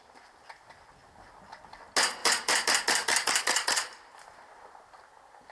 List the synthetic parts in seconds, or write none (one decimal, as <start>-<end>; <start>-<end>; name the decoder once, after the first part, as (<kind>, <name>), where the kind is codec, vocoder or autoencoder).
none